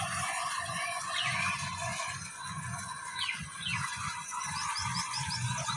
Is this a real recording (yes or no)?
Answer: no